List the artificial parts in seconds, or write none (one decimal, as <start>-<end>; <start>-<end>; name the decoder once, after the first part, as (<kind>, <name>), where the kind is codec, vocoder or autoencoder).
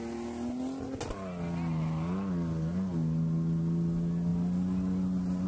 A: none